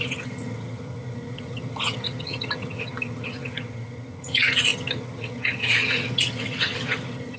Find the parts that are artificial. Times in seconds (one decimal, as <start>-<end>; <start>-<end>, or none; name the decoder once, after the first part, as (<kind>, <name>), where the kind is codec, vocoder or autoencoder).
0.0-7.4 (vocoder, HiFi-GAN)